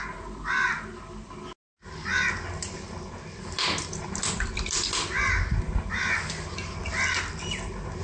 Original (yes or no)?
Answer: yes